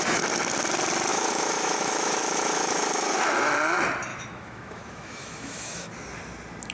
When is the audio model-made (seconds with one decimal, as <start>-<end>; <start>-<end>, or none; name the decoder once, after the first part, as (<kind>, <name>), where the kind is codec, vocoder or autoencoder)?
1.1-3.5 (autoencoder, DAC-VAE); 4.1-5.9